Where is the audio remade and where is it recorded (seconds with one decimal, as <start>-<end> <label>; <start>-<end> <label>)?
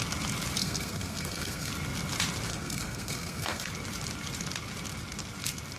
0.0-0.6 recorded; 0.6-1.7 remade; 1.7-2.5 recorded; 2.5-3.7 remade; 3.7-5.8 recorded